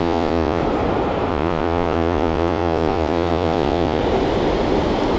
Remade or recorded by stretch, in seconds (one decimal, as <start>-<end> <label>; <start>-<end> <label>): 0.0-0.6 remade; 0.6-1.3 recorded; 1.3-4.0 remade; 4.0-5.2 recorded